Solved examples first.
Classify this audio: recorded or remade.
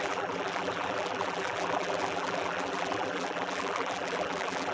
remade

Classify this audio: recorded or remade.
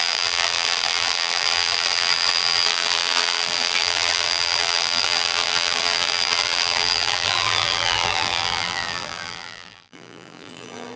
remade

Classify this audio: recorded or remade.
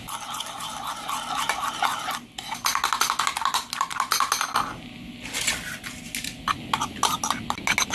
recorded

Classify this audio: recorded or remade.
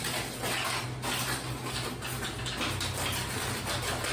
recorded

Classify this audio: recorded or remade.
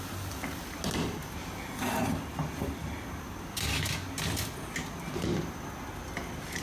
recorded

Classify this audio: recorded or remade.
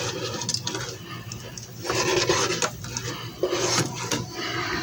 recorded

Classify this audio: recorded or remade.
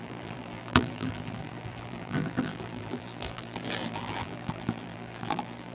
remade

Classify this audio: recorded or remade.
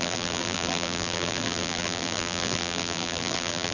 remade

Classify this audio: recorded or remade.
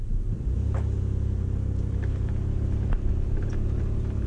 remade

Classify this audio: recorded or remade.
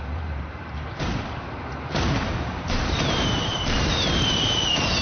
remade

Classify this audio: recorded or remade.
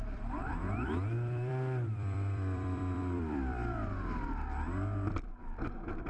remade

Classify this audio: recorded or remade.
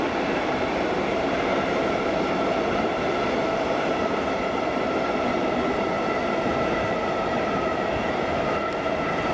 remade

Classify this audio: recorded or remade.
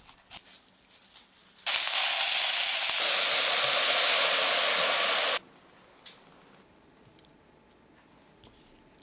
recorded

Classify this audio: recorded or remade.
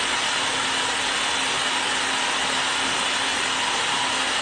recorded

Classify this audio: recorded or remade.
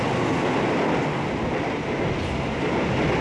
recorded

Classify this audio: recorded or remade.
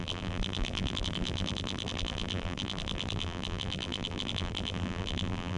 remade